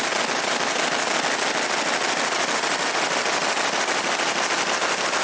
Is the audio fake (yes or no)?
no